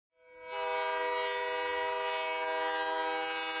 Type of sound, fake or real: real